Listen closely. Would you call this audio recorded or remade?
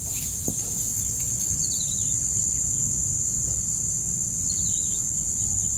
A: recorded